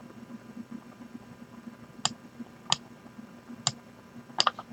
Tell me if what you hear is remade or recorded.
recorded